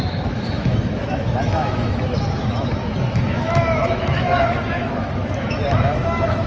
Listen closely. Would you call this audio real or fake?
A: fake